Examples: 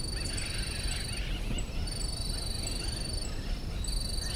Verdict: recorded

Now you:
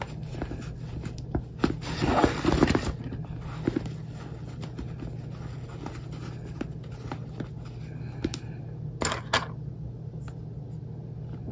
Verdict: recorded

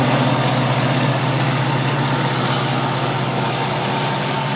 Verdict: remade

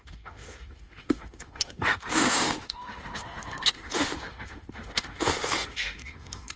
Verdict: remade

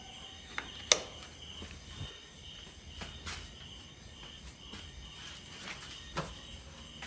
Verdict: recorded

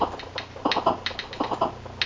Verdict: recorded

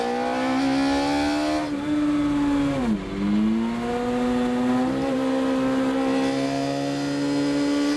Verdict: recorded